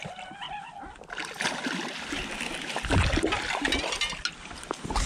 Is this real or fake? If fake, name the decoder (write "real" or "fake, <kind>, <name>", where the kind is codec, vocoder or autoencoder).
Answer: real